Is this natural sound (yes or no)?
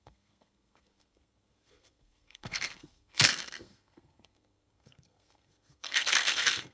no